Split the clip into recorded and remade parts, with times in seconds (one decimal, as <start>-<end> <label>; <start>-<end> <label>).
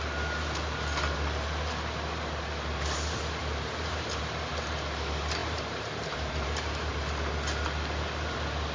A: 0.0-3.4 recorded; 3.4-4.2 remade; 4.2-5.4 recorded; 5.4-6.9 remade; 6.9-8.7 recorded